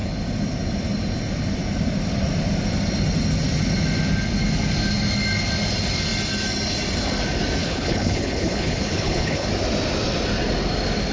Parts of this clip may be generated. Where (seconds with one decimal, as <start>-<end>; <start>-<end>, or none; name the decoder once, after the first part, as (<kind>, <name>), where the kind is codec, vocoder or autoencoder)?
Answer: 7.6-9.5 (codec, HILCodec)